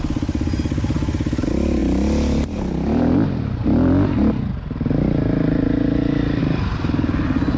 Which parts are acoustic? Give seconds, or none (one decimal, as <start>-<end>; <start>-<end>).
0.0-7.6